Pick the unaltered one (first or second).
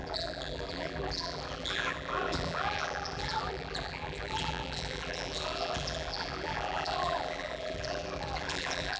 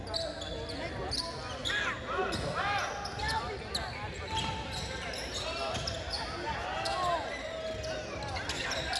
second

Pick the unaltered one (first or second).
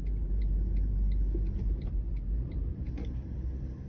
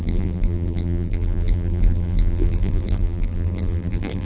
first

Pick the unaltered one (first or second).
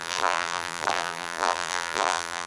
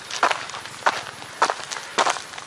second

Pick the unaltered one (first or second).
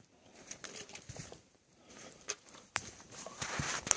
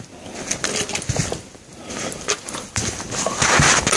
second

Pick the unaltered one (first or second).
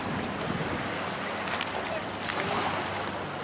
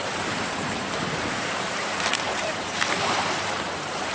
first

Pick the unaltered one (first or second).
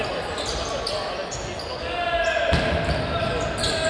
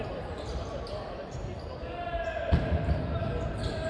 first